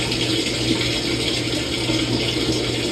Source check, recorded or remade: recorded